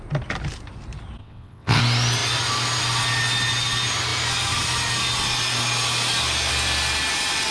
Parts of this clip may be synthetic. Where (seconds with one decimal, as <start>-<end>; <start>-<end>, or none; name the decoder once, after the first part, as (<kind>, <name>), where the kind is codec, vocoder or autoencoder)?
1.2-1.8 (vocoder, WaveNeXt)